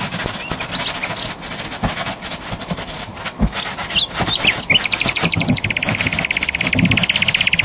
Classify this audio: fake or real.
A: real